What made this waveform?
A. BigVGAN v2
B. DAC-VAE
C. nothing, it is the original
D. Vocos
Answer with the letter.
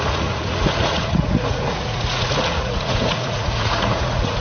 D